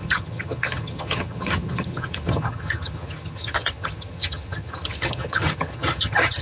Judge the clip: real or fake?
fake